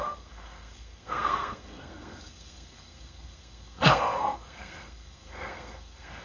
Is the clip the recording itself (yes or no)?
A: no